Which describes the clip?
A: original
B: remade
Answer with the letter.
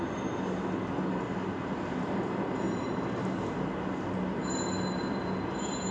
A